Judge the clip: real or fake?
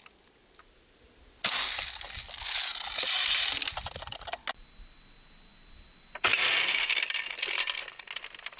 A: real